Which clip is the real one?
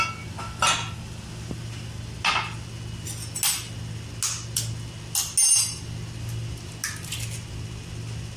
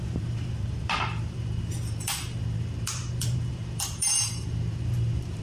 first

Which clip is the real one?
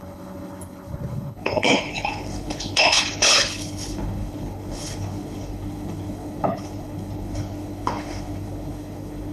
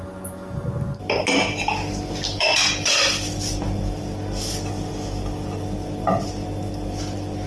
second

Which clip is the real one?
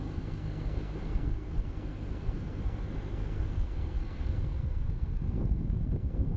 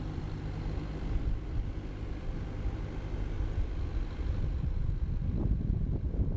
second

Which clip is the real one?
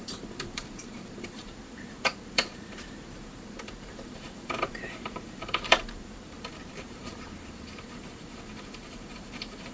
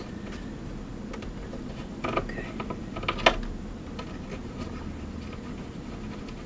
second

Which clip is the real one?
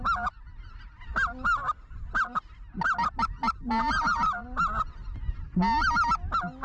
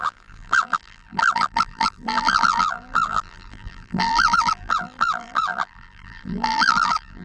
first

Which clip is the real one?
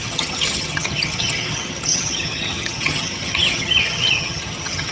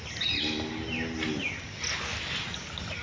second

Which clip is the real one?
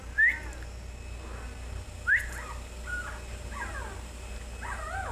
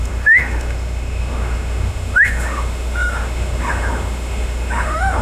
first